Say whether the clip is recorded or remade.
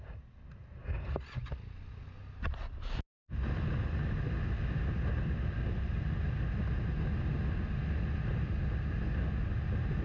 recorded